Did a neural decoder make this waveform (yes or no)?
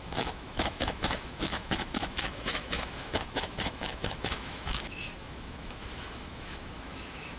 yes